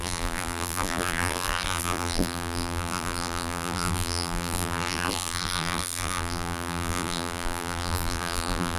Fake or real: fake